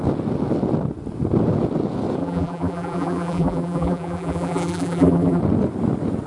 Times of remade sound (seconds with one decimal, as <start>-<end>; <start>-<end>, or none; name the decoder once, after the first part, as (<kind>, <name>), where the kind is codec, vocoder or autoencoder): 2.2-5.4 (vocoder, BigVGAN v2)